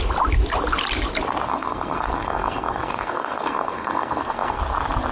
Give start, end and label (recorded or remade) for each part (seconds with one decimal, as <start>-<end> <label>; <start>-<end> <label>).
0.0-1.5 recorded; 1.5-4.6 remade; 4.6-5.1 recorded